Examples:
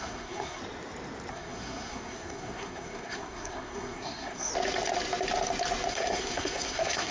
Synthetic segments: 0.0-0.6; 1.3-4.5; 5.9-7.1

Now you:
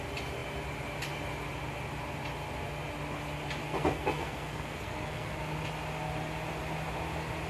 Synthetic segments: 3.6-5.4